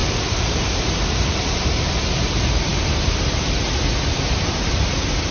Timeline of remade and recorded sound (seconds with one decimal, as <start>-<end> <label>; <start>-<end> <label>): 0.0-1.9 remade; 1.9-5.3 recorded